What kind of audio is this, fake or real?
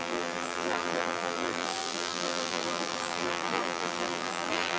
fake